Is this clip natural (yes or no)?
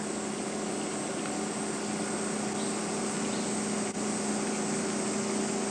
yes